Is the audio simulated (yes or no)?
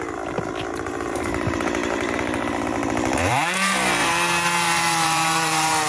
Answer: yes